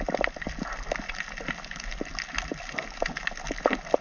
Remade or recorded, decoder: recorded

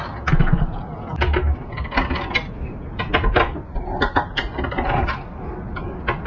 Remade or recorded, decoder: recorded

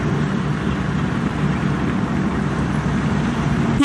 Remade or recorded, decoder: recorded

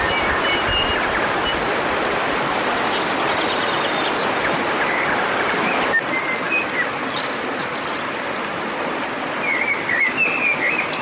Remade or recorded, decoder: recorded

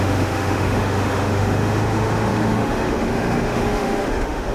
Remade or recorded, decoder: remade, autoencoder, DAC-VAE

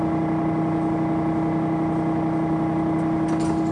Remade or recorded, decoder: recorded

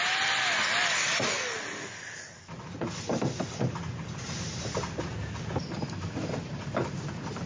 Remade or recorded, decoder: recorded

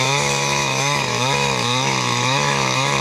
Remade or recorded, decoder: remade, autoencoder, DAC-VAE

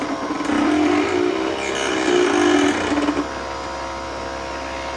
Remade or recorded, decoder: recorded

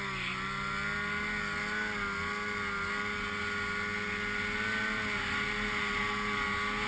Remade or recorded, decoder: recorded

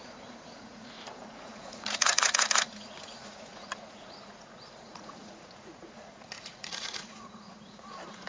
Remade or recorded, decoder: remade, vocoder, Vocos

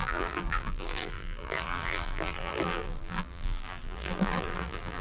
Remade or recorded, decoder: remade, vocoder, BigVGAN v2